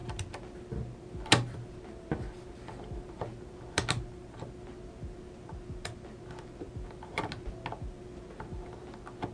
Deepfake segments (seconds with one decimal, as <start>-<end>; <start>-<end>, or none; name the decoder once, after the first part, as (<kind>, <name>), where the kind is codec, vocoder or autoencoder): none